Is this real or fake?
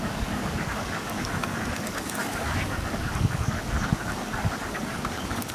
fake